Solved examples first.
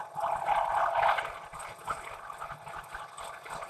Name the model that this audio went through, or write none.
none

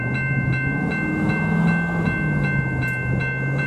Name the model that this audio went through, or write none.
none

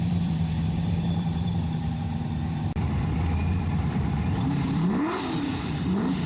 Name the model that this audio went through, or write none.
vocoder, BigVGAN v2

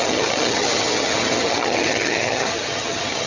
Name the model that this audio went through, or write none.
vocoder, HiFi-GAN